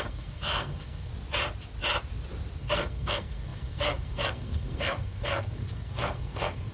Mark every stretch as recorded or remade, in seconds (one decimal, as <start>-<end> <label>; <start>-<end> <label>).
0.0-1.1 remade; 1.1-2.6 recorded; 2.6-6.7 remade

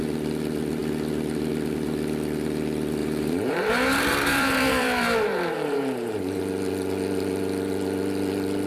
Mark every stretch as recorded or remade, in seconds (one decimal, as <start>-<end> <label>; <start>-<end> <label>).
0.0-3.0 recorded; 3.0-6.4 remade; 6.4-8.7 recorded

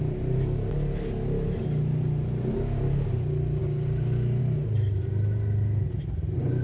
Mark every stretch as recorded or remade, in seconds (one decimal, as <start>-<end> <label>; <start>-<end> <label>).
0.0-6.6 recorded

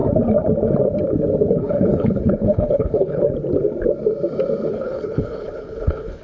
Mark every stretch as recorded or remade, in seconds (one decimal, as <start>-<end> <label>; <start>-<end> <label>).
0.0-1.5 recorded; 1.5-3.2 remade; 3.2-4.7 recorded; 4.7-6.2 remade

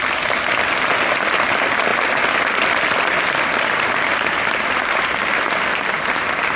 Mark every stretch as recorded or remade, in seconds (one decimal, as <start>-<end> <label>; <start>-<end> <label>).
0.0-6.6 recorded

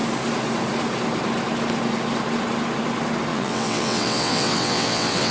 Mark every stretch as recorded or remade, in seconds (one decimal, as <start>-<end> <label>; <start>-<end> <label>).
0.0-3.3 recorded; 3.3-5.3 remade

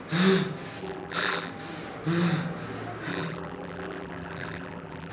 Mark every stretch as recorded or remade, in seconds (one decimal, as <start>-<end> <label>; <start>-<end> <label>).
0.0-0.8 recorded; 0.8-1.5 remade; 1.5-3.1 recorded; 3.1-5.1 remade

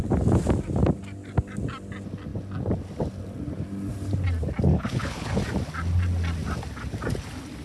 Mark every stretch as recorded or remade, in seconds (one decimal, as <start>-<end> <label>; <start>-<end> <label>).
0.0-4.7 recorded; 4.7-5.4 remade; 5.4-7.6 recorded